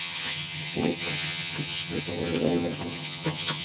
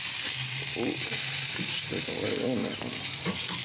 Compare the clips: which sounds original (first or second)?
second